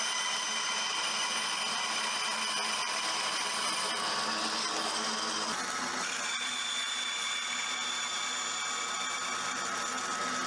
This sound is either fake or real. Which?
real